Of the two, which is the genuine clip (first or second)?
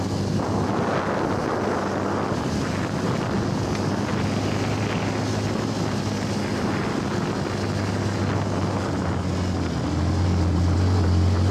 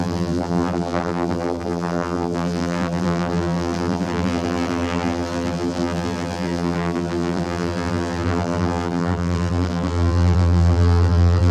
first